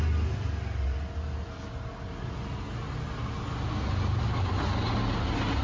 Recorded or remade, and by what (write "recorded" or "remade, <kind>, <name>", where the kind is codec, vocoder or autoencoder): recorded